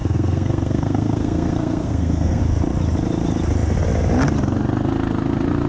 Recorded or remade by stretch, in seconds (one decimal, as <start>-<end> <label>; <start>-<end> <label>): 0.0-2.4 remade; 2.4-5.7 recorded